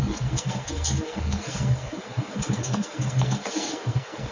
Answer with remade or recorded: remade